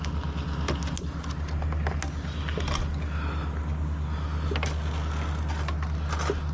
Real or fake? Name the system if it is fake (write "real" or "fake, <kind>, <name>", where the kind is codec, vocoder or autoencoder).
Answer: real